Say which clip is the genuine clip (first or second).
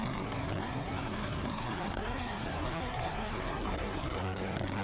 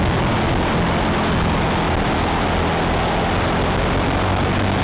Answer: second